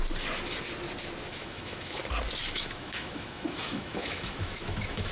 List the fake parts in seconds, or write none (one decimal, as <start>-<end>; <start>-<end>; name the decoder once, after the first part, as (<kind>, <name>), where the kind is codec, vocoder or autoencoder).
1.3-2.0 (autoencoder, DAC-VAE); 2.4-5.1